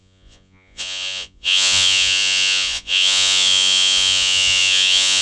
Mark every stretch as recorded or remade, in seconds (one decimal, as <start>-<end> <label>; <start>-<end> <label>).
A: 0.0-5.2 remade